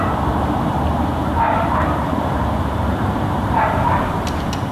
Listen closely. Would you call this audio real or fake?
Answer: fake